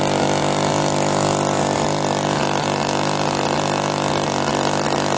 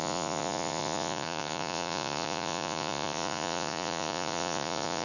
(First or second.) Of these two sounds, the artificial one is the second